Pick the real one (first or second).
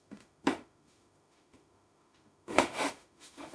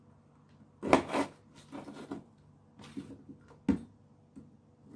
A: second